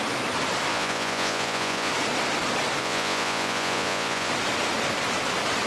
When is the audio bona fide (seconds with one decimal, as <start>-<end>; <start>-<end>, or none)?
0.0-0.7; 1.9-2.8; 4.3-5.7